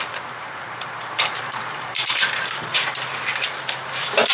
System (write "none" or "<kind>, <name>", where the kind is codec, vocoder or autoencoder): vocoder, BigVGAN v2